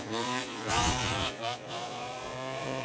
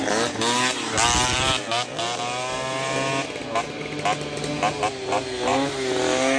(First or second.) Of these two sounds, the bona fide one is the second